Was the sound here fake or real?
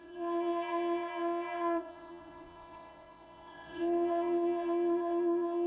fake